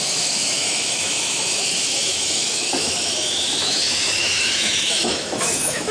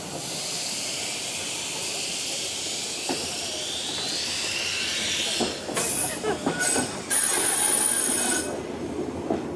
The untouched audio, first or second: second